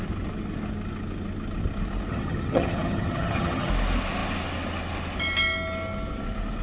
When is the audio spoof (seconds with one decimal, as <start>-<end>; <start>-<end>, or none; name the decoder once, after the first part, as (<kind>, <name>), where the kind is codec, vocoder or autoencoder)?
2.1-3.7 (vocoder, HiFi-GAN)